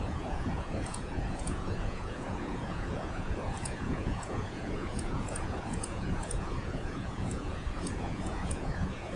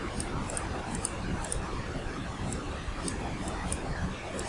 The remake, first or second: first